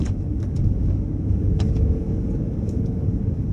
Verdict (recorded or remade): remade